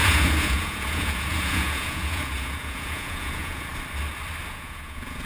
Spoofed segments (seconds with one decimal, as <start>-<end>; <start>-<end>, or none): 0.0-3.7; 4.5-5.3